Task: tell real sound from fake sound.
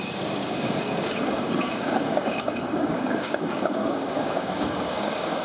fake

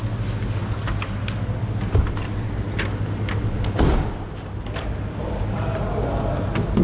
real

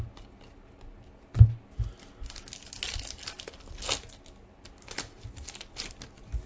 real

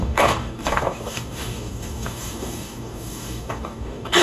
fake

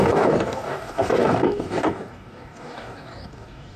fake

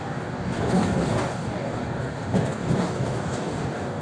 fake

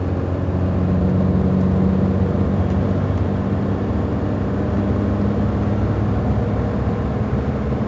real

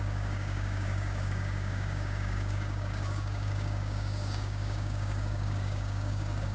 fake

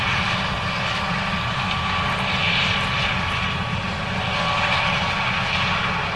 real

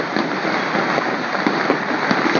real